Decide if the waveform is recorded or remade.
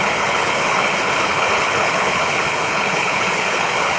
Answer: remade